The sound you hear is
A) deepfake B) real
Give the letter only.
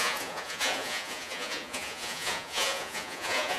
A